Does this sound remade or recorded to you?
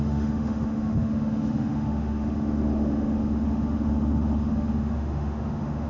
remade